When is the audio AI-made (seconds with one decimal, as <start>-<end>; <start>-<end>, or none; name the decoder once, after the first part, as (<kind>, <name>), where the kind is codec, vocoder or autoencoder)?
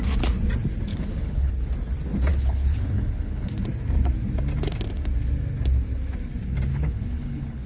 0.9-1.5 (codec, HILCodec); 2.3-3.5; 6.7-7.7